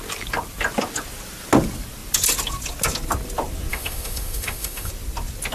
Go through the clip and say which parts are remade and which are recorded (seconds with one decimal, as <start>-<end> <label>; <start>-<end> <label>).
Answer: 0.0-3.7 recorded; 3.7-4.9 remade; 4.9-5.5 recorded